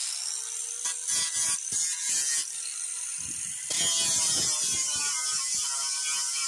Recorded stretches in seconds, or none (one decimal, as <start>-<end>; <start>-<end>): 0.0-6.5